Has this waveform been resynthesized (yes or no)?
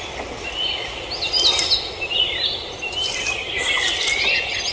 no